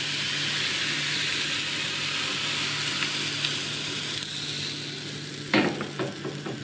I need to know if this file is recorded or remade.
recorded